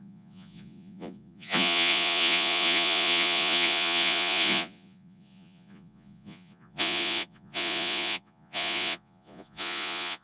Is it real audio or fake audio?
fake